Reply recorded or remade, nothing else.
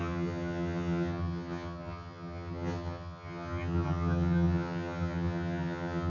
remade